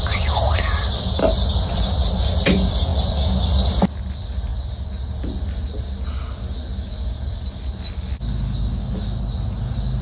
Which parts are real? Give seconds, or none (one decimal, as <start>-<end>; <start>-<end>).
0.0-10.0